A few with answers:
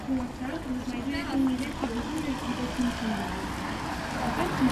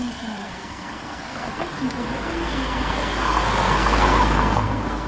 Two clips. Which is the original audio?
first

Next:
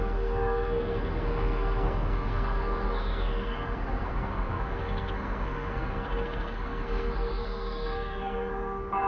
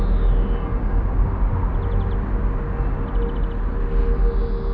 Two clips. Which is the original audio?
second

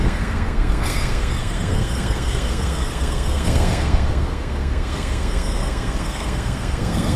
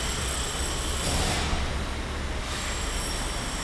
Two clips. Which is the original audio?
second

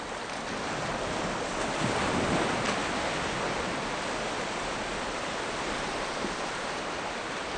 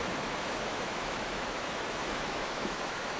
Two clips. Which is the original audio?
first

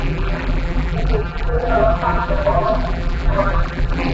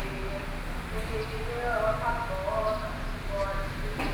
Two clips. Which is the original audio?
second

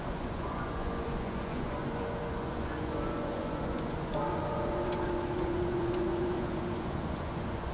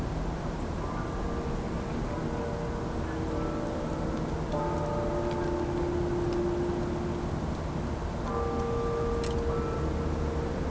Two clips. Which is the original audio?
second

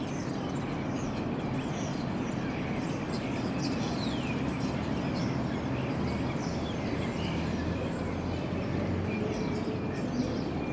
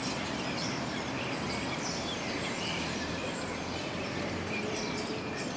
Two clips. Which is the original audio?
first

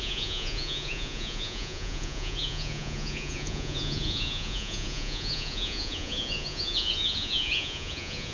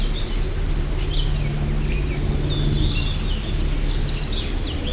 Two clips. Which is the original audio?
second